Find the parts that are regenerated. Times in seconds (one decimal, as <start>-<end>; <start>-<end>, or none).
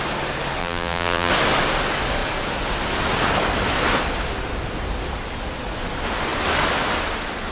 0.6-1.3